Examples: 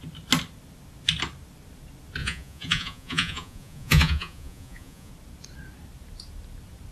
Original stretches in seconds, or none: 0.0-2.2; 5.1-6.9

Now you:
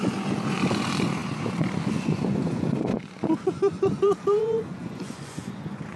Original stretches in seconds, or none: none

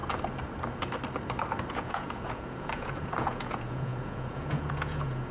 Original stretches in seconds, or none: 0.0-1.7

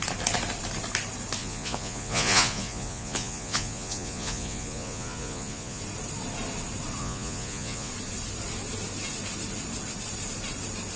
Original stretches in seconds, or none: 0.0-1.4; 5.8-7.0; 7.9-11.0

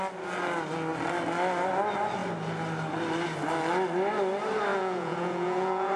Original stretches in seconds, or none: 0.0-4.7

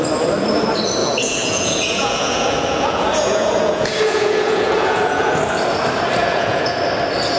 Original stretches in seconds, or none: 0.0-1.0; 5.4-6.2; 6.8-7.4

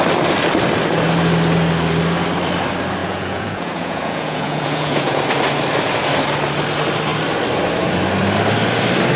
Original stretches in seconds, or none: 0.0-3.0; 5.2-9.2